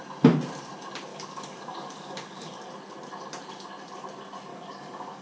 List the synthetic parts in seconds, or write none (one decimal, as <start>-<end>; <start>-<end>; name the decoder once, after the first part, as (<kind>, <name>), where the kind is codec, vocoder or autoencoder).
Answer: 1.1-2.7 (codec, DAC); 4.5-5.2